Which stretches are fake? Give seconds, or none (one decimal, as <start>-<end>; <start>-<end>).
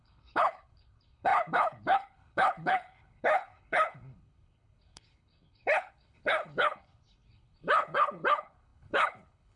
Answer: 0.0-9.6